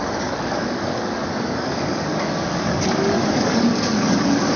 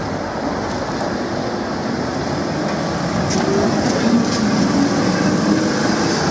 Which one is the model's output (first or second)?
first